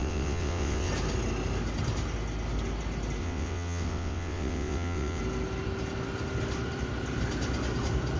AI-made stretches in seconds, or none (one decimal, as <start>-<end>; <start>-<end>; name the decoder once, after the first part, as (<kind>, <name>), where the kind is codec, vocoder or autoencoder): 0.0-0.9 (vocoder, WaveNeXt); 3.2-5.2